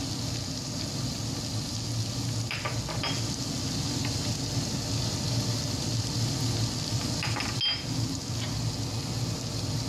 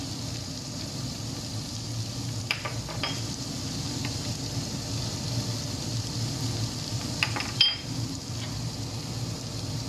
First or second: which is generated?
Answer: second